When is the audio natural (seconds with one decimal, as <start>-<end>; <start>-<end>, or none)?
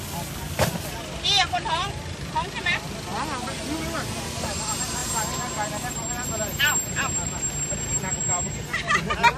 0.0-9.4